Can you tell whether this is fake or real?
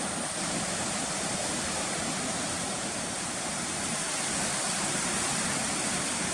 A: fake